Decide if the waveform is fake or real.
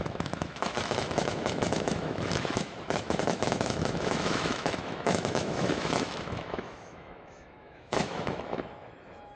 fake